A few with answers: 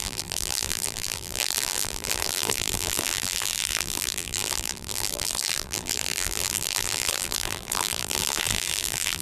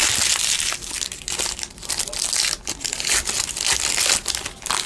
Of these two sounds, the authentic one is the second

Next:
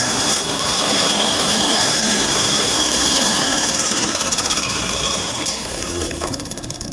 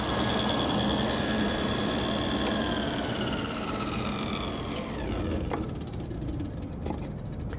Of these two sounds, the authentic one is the second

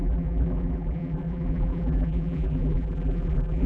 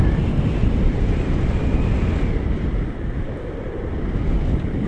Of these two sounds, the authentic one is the second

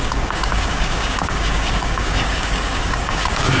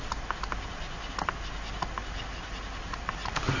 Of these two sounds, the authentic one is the second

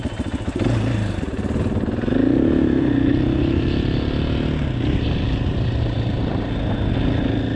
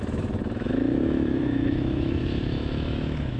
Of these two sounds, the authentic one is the first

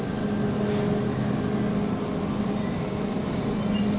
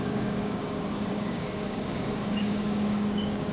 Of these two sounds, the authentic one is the first